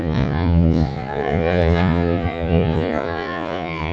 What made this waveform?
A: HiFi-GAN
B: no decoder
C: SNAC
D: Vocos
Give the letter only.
D